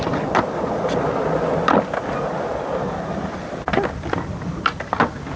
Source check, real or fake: real